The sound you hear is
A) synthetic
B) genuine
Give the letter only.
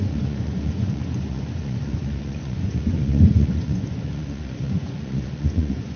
A